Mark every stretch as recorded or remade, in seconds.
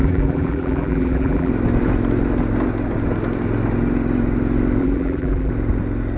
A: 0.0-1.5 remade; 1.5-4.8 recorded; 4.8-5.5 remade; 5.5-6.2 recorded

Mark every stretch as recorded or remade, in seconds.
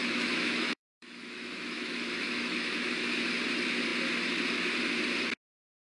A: 0.0-3.3 remade; 3.3-5.8 recorded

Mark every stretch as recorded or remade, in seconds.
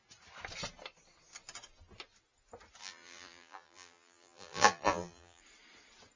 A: 0.0-2.8 recorded; 2.8-5.4 remade; 5.4-6.2 recorded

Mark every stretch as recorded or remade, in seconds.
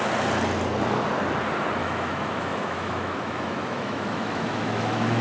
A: 0.0-1.8 recorded; 1.8-5.2 remade